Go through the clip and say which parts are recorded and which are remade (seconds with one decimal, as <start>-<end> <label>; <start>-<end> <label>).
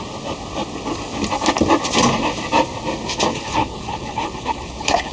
0.0-3.3 recorded; 3.3-5.1 remade